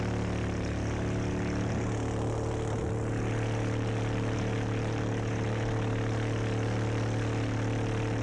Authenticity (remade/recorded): recorded